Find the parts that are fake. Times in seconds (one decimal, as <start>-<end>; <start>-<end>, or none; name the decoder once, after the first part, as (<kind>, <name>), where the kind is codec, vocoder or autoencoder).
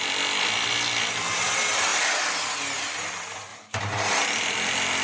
3.5-4.1 (vocoder, BigVGAN v2)